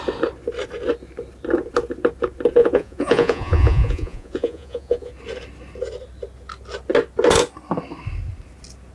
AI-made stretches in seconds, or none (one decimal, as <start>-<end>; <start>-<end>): 2.6-5.1